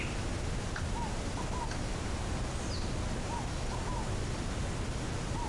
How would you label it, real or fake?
real